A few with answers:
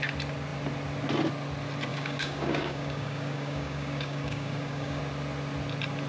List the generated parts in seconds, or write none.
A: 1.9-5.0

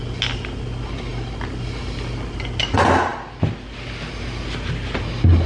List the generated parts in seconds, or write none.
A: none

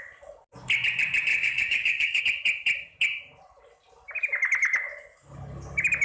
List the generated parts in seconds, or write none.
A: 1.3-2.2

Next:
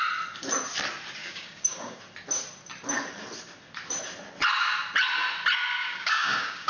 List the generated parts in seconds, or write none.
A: 1.2-2.0; 5.8-6.7